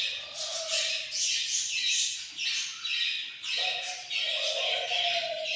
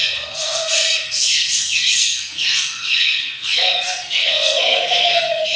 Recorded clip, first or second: first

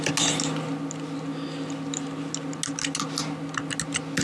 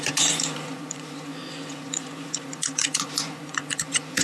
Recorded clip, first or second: first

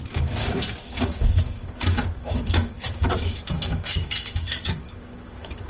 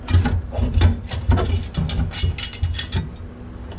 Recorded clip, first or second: second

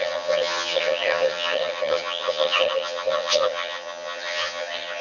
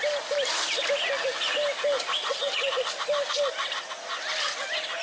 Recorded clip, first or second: second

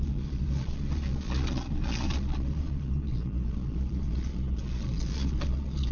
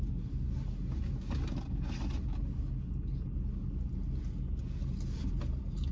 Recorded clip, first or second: second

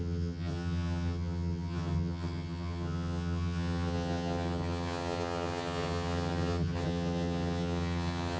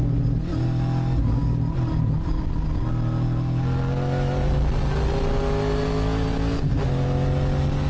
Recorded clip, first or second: second